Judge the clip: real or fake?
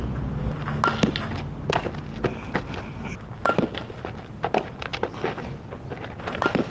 real